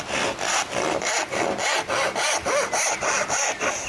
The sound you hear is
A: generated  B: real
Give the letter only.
B